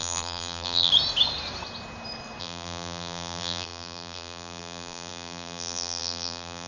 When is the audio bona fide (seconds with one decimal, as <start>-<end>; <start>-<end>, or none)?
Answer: 0.9-2.4